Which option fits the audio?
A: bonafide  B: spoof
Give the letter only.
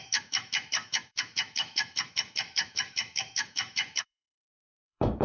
B